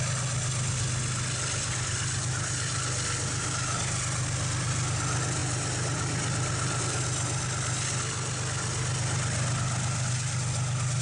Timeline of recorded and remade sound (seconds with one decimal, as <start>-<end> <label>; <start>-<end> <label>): 0.0-11.0 recorded

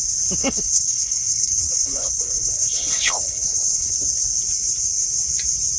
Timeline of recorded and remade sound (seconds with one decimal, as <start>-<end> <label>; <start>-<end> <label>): 0.0-0.4 recorded; 0.4-3.9 remade; 3.9-5.8 recorded

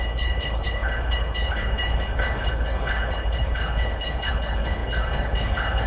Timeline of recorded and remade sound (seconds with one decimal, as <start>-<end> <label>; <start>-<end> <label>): 0.0-5.9 remade

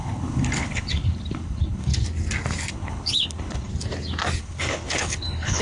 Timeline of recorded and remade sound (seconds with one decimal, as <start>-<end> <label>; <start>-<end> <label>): 0.0-1.9 remade; 1.9-2.7 recorded; 2.7-3.7 remade; 3.7-4.4 recorded; 4.4-5.6 remade

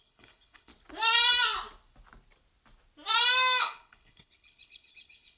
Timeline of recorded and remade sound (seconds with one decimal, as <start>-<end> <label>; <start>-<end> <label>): 0.0-0.7 remade; 0.7-3.6 recorded; 3.6-5.4 remade

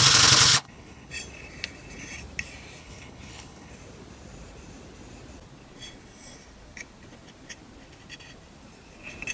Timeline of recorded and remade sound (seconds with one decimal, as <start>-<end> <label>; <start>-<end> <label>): 0.0-0.5 recorded; 0.5-1.1 remade; 1.1-2.8 recorded; 2.8-3.7 remade; 3.7-9.3 recorded

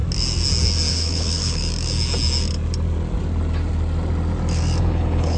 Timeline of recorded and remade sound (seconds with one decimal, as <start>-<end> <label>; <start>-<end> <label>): 0.0-0.9 recorded; 0.9-1.6 remade; 1.6-4.8 recorded; 4.8-5.4 remade

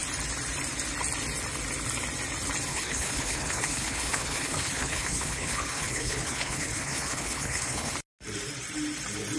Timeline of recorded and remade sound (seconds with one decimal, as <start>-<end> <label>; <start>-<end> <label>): 0.0-2.7 recorded; 2.7-7.9 remade; 7.9-9.4 recorded